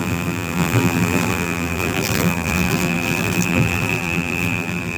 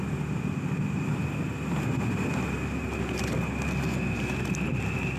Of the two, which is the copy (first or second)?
first